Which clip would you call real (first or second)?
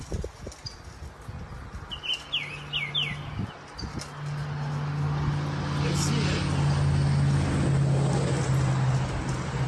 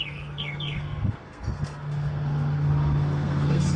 first